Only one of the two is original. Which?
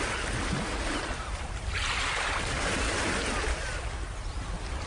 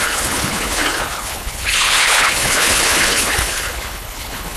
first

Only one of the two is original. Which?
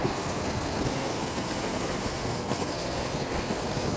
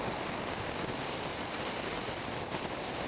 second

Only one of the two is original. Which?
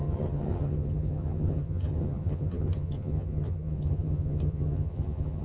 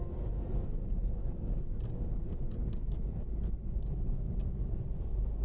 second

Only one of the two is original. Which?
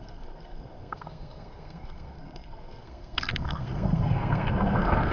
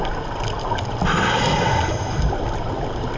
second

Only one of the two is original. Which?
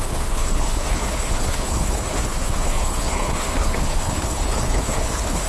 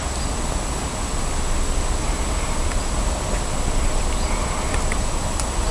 second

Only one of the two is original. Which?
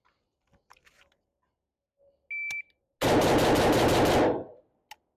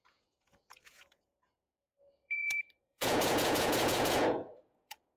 first